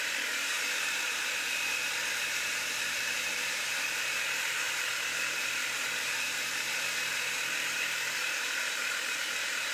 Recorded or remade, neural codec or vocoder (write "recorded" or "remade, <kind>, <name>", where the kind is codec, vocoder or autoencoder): remade, vocoder, BigVGAN v2